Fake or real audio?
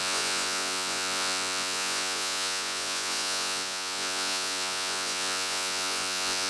fake